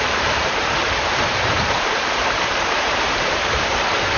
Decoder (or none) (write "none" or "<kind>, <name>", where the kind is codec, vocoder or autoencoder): vocoder, BigVGAN v2